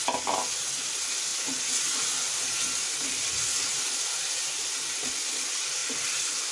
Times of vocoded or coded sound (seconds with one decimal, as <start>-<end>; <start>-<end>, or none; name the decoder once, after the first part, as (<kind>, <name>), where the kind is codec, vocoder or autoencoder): none